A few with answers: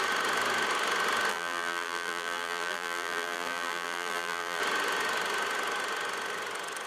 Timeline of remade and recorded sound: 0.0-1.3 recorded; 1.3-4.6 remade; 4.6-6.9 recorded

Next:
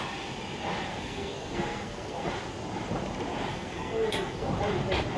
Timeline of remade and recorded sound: 0.0-0.9 recorded; 0.9-2.3 remade; 2.3-3.5 recorded; 3.5-4.5 remade; 4.5-5.2 recorded

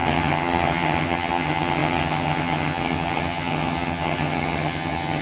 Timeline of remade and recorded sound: 0.0-5.2 remade

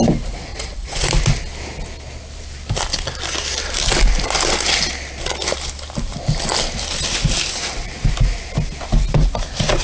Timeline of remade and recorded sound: 0.0-0.5 recorded; 0.5-1.1 remade; 1.1-9.8 recorded

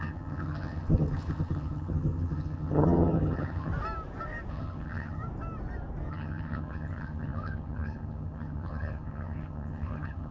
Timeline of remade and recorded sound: 0.0-3.7 remade; 3.7-4.5 recorded; 4.5-5.2 remade; 5.2-6.1 recorded; 6.1-10.3 remade